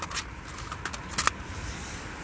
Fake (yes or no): no